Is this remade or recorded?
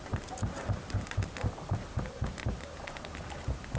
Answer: recorded